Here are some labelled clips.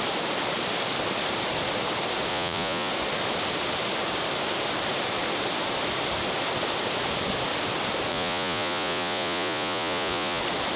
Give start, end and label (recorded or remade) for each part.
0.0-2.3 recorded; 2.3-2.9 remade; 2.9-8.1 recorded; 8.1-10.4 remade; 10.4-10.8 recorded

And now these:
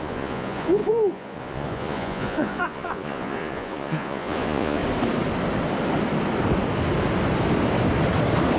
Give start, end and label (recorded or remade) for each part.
0.0-4.8 remade; 4.8-8.6 recorded

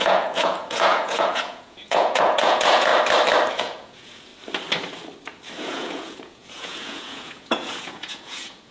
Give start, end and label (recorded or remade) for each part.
0.0-2.9 remade; 2.9-3.5 recorded; 3.5-4.3 remade; 4.3-5.6 recorded; 5.6-8.7 remade